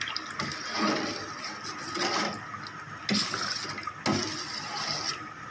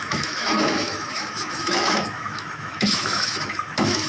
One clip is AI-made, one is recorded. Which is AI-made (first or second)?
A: second